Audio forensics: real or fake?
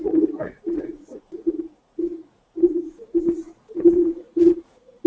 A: fake